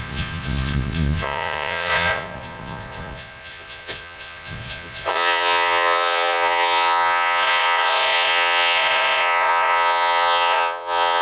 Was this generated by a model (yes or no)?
yes